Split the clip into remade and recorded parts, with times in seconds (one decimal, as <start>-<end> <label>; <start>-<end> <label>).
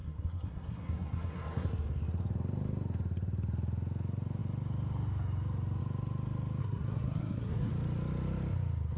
0.0-1.7 remade; 1.7-6.6 recorded; 6.6-7.7 remade; 7.7-9.0 recorded